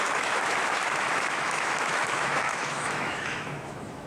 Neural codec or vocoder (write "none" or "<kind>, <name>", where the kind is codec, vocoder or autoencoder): autoencoder, DAC-VAE